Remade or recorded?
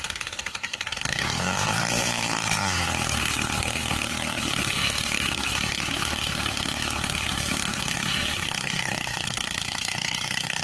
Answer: remade